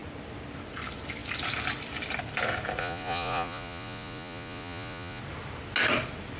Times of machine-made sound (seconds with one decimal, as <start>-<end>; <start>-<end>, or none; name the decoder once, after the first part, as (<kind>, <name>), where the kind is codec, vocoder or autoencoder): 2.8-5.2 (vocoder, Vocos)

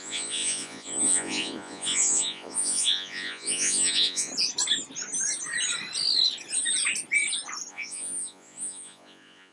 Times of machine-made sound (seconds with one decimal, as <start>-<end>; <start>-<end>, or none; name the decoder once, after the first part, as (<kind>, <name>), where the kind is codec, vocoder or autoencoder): 0.0-4.3 (vocoder, Vocos); 7.7-9.5

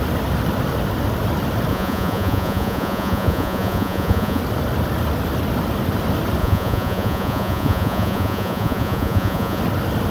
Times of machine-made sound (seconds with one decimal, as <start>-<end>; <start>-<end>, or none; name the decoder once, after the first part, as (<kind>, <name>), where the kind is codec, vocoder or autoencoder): 1.7-4.4 (vocoder, Vocos); 6.4-9.6

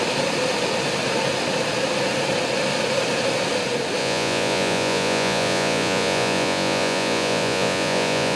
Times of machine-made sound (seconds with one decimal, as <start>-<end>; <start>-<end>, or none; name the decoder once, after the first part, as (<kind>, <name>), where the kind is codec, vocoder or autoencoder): 4.0-8.4 (vocoder, Vocos)

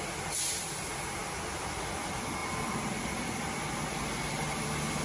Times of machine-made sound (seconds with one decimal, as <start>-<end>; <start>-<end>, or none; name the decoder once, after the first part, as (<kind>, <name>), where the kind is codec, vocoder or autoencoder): none

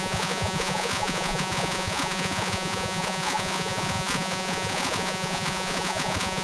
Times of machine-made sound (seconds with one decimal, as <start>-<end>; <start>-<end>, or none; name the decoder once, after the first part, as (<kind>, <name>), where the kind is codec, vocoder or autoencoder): 0.0-6.4 (vocoder, Vocos)